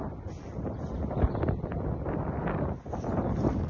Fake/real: real